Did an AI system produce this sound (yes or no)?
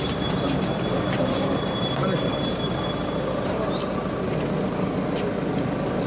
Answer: no